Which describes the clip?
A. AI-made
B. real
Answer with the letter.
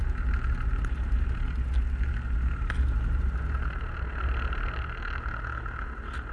B